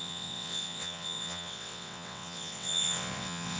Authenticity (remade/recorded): remade